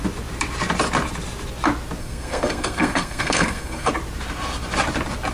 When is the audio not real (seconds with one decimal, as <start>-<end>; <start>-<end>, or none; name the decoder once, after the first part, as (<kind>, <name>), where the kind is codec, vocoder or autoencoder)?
2.0-3.9 (codec, SNAC)